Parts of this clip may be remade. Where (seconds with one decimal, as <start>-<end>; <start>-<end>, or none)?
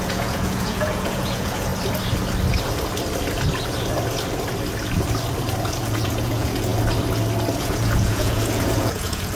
0.0-1.7; 5.6-6.7; 7.6-9.3